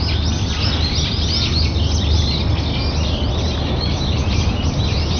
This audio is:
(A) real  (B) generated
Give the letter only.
A